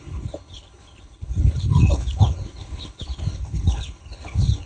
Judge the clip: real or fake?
fake